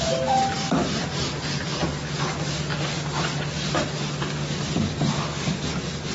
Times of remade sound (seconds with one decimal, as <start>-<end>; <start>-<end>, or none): none